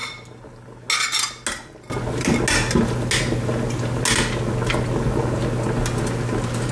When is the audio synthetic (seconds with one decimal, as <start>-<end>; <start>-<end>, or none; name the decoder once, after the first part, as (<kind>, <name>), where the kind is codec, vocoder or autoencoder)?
none